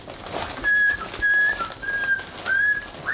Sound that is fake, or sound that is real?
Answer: real